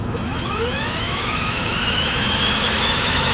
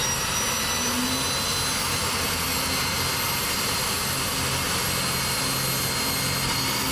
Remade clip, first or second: first